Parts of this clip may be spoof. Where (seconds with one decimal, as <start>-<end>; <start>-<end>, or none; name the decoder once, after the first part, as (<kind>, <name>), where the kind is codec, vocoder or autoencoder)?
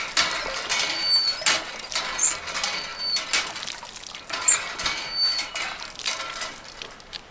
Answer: none